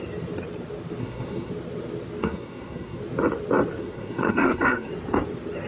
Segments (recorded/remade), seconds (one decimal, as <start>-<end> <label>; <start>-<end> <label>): 0.0-1.0 recorded; 1.0-1.5 remade; 1.5-2.2 recorded; 2.2-3.0 remade; 3.0-3.8 recorded; 3.8-4.9 remade; 4.9-5.7 recorded